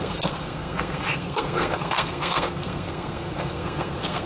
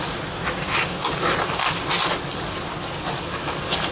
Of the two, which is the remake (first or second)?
first